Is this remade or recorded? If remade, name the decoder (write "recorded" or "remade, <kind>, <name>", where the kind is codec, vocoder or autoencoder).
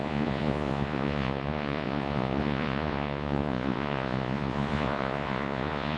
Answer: remade, vocoder, Vocos